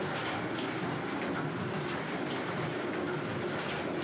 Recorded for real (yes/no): yes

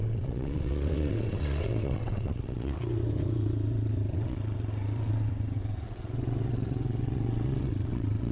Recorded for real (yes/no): no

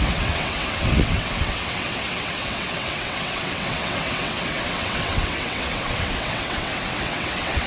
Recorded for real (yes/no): no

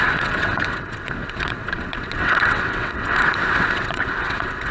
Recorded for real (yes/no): no